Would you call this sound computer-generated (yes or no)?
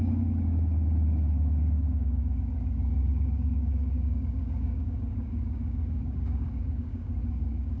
yes